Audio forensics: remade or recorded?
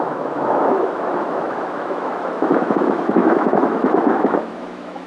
remade